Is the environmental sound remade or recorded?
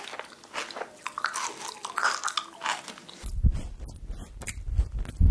recorded